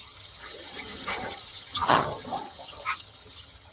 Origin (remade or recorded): remade